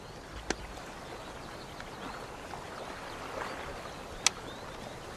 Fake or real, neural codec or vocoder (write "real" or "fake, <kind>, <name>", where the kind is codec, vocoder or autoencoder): real